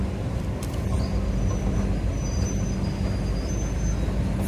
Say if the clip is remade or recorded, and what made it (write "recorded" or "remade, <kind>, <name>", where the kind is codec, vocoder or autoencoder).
recorded